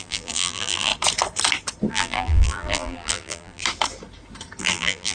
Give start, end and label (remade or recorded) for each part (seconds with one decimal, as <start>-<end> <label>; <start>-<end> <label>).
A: 0.0-0.9 remade; 0.9-1.9 recorded; 1.9-3.6 remade; 3.6-4.6 recorded; 4.6-5.1 remade

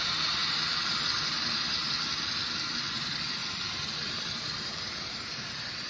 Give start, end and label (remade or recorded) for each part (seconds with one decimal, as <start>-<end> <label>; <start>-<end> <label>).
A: 0.0-1.8 remade; 1.8-2.9 recorded; 2.9-5.9 remade

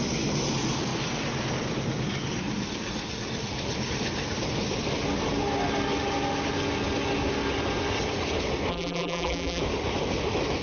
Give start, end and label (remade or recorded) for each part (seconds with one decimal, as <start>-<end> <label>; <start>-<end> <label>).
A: 0.0-8.7 recorded; 8.7-9.6 remade; 9.6-10.6 recorded

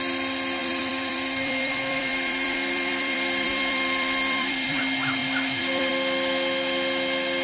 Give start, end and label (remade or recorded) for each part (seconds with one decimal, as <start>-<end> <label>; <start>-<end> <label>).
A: 0.0-0.6 recorded; 0.6-4.8 remade; 4.8-5.2 recorded; 5.2-5.9 remade; 5.9-7.4 recorded

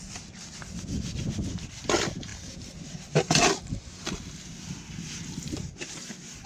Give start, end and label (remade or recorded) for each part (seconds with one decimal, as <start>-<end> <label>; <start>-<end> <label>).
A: 0.0-6.5 recorded